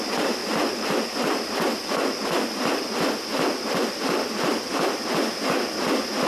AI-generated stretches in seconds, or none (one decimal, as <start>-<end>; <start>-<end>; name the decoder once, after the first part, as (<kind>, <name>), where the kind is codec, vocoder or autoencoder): 0.4-1.0 (vocoder, BigVGAN v2)

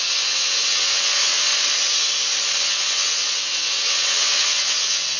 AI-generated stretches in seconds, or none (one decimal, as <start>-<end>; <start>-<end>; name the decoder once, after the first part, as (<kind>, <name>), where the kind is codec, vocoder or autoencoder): 0.0-1.5 (vocoder, WaveNeXt); 2.6-5.2

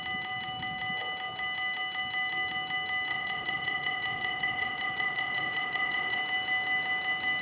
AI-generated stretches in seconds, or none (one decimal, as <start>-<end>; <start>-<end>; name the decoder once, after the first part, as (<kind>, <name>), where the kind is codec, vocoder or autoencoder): 3.1-6.2 (vocoder, WaveNeXt)